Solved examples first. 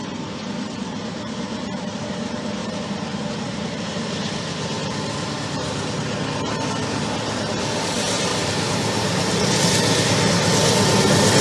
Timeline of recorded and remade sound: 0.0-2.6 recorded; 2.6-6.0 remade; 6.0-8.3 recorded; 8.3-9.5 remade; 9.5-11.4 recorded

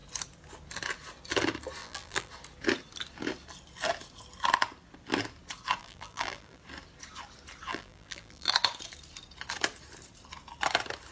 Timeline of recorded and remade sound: 0.0-1.8 recorded; 1.8-2.3 remade; 2.3-5.8 recorded; 5.8-6.6 remade; 6.6-7.7 recorded; 7.7-8.5 remade; 8.5-11.1 recorded

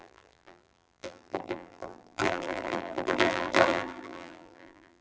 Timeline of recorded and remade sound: 0.0-5.0 remade